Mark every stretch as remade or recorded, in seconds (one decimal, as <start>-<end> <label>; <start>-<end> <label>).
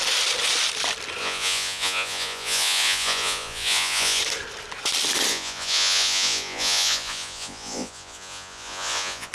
0.0-1.2 recorded; 1.2-4.2 remade; 4.2-5.3 recorded; 5.3-9.3 remade